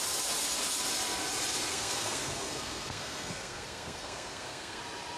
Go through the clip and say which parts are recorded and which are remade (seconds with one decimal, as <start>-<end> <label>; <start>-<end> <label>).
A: 0.0-1.7 recorded; 1.7-4.8 remade; 4.8-5.2 recorded

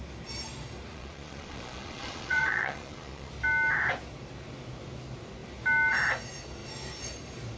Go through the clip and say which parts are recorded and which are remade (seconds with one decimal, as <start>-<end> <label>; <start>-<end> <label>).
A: 0.0-0.9 recorded; 0.9-3.3 remade; 3.3-7.6 recorded

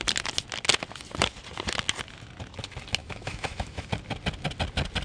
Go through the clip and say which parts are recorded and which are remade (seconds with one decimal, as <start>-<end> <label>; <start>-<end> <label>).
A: 0.0-3.0 recorded; 3.0-3.9 remade; 3.9-5.0 recorded